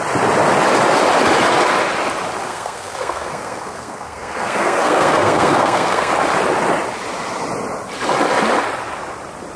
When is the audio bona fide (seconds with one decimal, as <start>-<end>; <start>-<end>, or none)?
0.0-2.4; 6.1-9.6